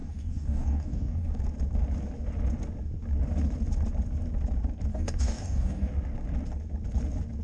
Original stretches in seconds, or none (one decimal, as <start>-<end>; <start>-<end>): 1.3-4.9; 5.9-7.4